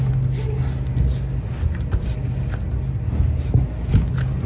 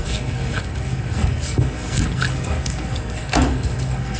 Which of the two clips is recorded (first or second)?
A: first